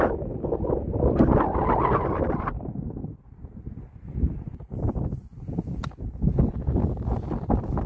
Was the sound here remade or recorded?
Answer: recorded